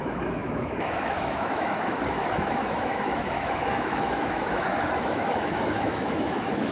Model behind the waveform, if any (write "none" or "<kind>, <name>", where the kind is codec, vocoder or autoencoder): autoencoder, DAC-VAE